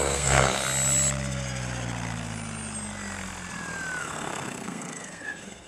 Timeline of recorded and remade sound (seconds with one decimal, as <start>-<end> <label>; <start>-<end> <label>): 0.0-0.6 remade; 0.6-4.0 recorded; 4.0-5.7 remade